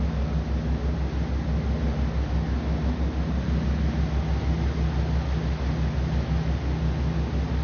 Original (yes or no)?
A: yes